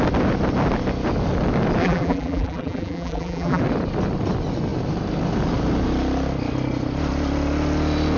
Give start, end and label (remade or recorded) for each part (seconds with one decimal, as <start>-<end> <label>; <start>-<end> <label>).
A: 0.0-1.8 recorded; 1.8-3.6 remade; 3.6-8.2 recorded